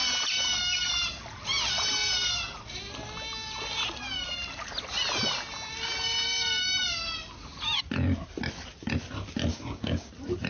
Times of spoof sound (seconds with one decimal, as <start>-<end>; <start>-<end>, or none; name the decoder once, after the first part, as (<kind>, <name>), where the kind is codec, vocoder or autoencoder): 9.5-10.1 (codec, DAC)